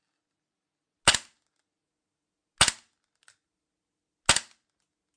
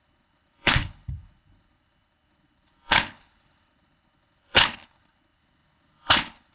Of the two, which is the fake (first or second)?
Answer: second